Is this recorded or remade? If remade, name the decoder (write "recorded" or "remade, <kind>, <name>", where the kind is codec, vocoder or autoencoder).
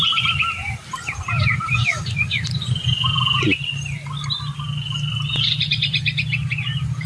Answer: remade, vocoder, BigVGAN v2